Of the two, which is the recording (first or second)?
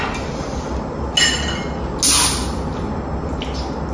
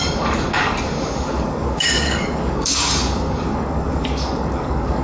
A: first